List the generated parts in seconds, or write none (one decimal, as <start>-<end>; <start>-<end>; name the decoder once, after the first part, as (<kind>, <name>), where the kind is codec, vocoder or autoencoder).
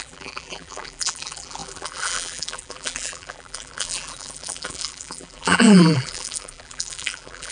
0.0-7.5 (vocoder, BigVGAN v2)